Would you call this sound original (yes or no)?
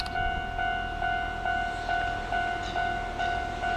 yes